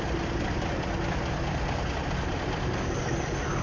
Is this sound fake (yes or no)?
no